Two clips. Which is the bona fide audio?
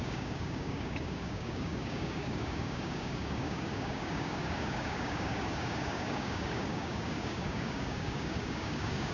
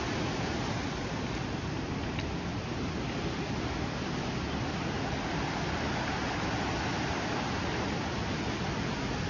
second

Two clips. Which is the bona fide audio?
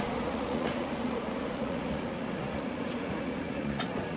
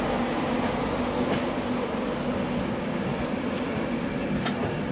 second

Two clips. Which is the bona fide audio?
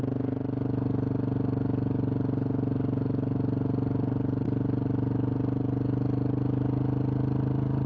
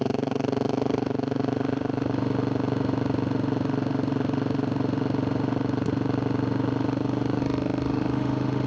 first